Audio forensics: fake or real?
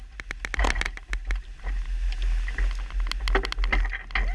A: real